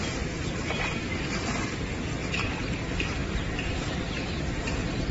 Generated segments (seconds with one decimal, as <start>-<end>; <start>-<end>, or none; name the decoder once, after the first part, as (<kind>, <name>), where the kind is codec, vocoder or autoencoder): 2.2-2.8 (vocoder, BigVGAN v2); 3.2-5.1